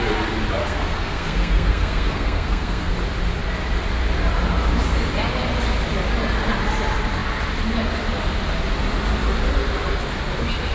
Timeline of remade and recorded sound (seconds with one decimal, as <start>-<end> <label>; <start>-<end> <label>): 0.0-0.6 recorded; 0.6-2.9 remade; 2.9-10.7 recorded